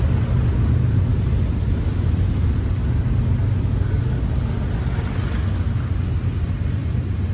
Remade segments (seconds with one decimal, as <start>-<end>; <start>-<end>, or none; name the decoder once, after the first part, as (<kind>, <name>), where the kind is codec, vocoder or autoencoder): none